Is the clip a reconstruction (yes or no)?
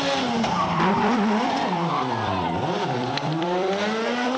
yes